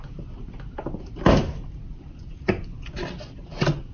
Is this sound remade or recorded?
recorded